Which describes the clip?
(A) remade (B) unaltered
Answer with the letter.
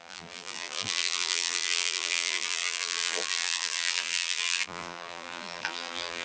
A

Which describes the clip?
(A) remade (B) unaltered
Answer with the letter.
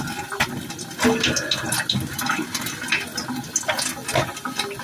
B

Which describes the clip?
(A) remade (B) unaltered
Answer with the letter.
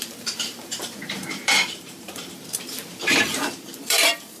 A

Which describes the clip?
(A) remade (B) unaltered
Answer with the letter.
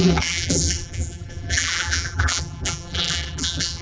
A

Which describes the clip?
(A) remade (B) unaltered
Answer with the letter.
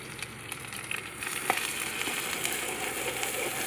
B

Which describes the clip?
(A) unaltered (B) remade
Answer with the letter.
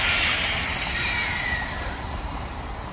B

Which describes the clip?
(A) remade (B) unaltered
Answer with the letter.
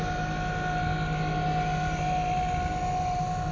B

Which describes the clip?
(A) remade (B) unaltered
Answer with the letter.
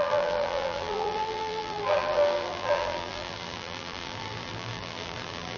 A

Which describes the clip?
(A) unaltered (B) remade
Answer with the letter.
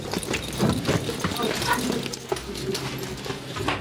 A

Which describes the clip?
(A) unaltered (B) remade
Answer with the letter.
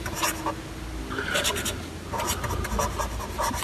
A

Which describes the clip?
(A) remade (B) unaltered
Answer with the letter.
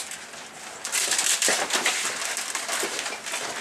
B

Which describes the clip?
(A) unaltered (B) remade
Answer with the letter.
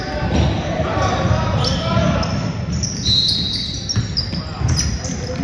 A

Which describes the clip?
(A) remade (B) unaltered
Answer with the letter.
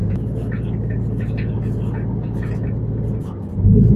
B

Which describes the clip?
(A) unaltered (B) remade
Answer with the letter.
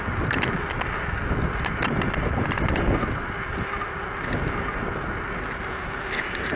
A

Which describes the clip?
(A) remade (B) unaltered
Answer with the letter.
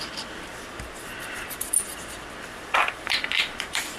A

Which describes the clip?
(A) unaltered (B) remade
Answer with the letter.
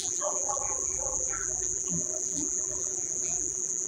B